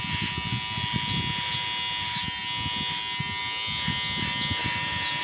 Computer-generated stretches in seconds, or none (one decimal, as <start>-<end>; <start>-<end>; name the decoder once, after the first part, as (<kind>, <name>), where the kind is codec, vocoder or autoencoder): none